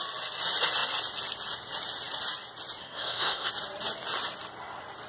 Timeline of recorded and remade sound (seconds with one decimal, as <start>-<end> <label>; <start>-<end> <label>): 0.0-2.8 recorded; 2.8-3.5 remade; 3.5-5.1 recorded